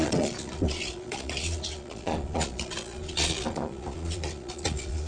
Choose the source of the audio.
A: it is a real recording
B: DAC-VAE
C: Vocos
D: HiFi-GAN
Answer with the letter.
C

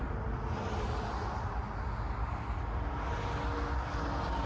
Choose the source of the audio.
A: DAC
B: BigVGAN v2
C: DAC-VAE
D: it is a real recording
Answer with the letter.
D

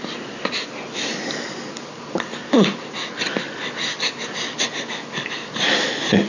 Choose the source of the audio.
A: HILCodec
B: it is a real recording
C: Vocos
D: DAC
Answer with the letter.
B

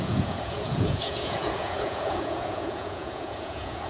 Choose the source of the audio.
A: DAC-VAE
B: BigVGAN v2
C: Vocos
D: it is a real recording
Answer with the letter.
C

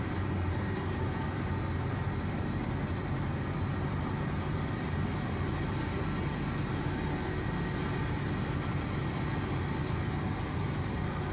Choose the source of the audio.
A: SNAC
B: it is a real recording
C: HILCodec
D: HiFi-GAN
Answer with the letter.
B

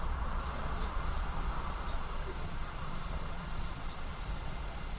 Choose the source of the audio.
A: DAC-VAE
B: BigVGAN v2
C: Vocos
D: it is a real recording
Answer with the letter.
C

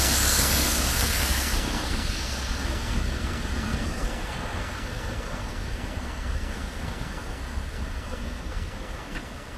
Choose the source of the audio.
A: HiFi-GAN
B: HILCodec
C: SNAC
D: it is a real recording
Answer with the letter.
C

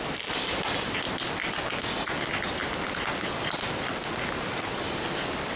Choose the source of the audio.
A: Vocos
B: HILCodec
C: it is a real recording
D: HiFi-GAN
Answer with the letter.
C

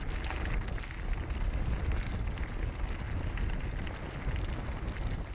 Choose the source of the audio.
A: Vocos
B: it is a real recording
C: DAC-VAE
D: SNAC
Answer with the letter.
B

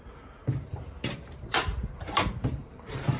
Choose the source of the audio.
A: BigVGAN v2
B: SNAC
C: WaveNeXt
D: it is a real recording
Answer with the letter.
A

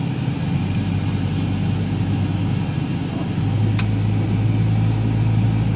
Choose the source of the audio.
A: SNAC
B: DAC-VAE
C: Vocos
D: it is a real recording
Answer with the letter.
D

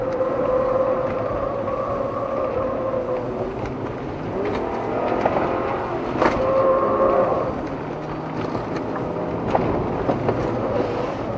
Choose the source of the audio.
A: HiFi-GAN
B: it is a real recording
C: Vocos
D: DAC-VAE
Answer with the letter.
B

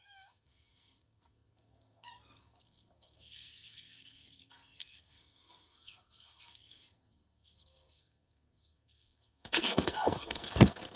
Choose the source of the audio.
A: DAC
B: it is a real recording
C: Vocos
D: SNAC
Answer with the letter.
D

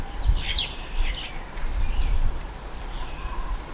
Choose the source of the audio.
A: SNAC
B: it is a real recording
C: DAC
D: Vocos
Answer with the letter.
B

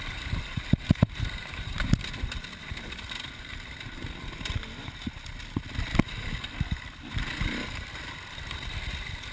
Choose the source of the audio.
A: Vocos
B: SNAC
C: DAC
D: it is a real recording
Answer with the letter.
D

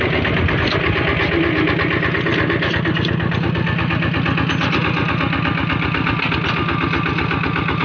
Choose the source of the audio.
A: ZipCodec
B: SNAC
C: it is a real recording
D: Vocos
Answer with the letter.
C